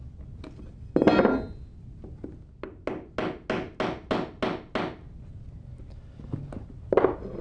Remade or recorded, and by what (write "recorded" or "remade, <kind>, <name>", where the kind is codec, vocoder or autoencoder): recorded